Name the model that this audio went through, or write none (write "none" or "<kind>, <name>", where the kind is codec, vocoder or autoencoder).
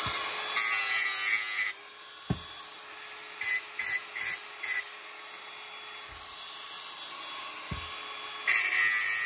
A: none